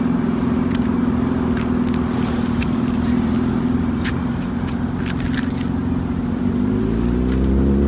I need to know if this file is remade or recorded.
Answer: recorded